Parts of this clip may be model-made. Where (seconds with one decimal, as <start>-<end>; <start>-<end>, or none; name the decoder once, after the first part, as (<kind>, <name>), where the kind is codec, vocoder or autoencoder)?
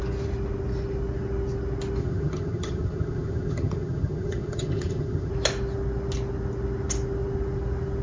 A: 2.0-5.3 (vocoder, HiFi-GAN)